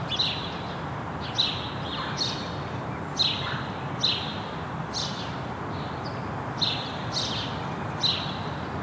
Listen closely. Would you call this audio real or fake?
real